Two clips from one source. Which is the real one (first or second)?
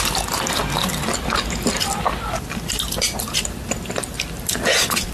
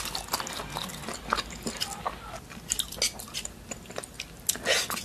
second